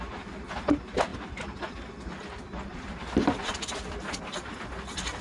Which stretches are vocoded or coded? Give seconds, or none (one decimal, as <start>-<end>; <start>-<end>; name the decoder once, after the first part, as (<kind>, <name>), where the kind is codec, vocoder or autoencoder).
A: none

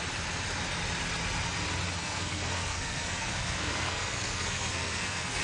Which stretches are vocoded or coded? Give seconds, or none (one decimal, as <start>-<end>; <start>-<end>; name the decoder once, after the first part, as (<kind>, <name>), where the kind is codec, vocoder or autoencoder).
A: 2.0-5.4 (codec, SNAC)

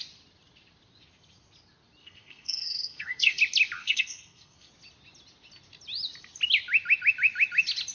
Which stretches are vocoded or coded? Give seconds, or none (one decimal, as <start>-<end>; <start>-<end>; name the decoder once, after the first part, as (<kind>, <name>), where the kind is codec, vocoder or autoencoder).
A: 2.0-3.4 (codec, SNAC); 3.8-4.7